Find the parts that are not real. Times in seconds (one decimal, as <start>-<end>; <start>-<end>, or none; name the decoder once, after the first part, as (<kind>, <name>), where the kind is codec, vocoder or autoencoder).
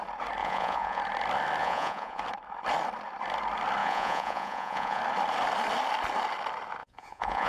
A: 0.4-1.0 (vocoder, Vocos); 1.6-2.2; 3.8-5.0; 6.8-7.5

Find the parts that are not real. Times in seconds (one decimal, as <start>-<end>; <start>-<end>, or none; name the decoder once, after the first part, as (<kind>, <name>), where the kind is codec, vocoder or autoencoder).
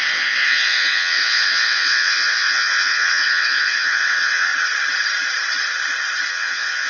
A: 0.0-4.5 (vocoder, WaveNeXt); 6.3-6.9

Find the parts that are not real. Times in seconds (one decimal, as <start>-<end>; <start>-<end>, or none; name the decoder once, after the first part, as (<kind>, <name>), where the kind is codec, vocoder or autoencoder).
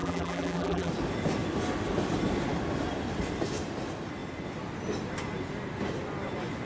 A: 0.0-0.9 (vocoder, BigVGAN v2)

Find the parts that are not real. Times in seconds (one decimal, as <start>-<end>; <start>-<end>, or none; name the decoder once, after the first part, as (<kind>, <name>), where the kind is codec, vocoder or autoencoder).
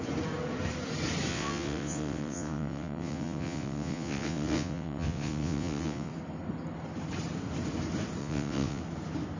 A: 1.3-6.1 (vocoder, WaveNeXt); 8.2-8.8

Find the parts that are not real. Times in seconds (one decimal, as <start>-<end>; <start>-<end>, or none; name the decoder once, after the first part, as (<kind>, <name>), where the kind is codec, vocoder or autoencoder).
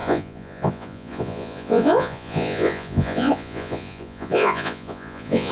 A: 0.0-5.5 (vocoder, Vocos)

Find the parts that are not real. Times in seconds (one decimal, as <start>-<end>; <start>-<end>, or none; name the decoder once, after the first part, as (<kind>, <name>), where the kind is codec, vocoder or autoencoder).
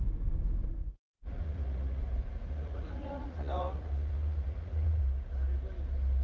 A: 0.8-2.0 (vocoder, Vocos); 2.4-5.0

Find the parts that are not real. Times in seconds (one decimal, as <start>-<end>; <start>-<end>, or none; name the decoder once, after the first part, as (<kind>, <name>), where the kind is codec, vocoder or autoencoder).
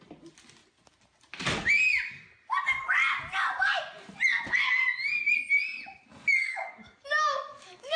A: 6.4-8.0 (codec, DAC)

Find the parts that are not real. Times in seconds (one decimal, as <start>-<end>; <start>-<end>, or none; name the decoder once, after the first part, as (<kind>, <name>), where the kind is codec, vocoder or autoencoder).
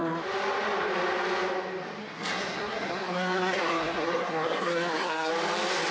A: 2.0-5.3 (codec, SNAC)